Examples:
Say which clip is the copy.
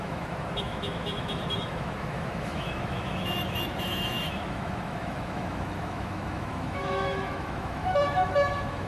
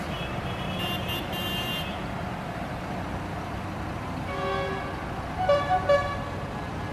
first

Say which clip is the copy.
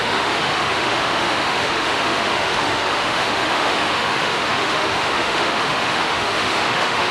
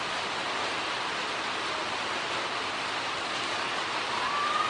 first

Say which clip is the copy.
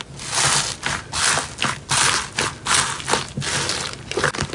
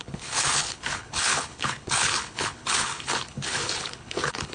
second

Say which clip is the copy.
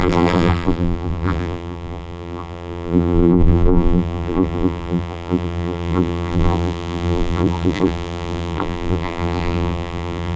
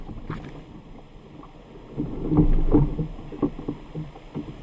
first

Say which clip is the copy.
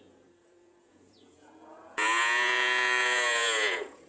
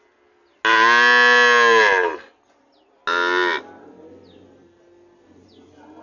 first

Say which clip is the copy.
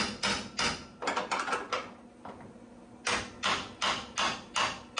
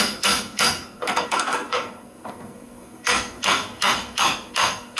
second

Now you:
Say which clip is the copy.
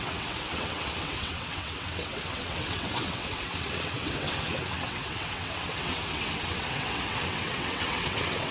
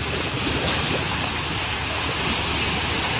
first